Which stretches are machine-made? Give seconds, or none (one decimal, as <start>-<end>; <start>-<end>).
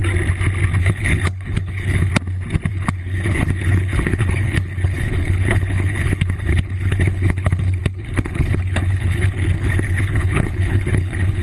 0.8-2.1; 2.7-11.4